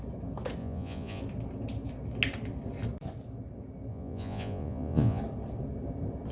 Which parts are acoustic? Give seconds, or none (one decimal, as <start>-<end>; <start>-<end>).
0.0-0.6; 1.2-3.9; 5.2-6.3